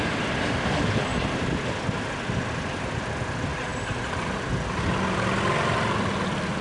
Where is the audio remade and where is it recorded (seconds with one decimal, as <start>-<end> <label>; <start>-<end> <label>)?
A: 0.0-6.6 recorded